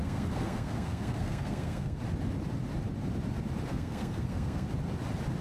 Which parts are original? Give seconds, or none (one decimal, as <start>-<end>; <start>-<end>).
2.0-3.7; 4.7-5.4